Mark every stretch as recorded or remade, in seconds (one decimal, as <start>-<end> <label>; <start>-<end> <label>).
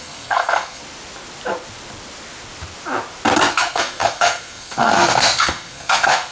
0.0-0.8 remade; 0.8-3.5 recorded; 3.5-6.3 remade